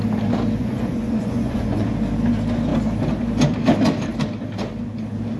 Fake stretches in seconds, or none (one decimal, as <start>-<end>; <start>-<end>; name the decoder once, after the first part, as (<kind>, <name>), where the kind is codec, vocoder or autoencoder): 0.6-1.9 (vocoder, Vocos)